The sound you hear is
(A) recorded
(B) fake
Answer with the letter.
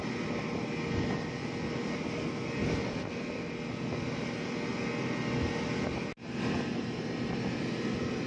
A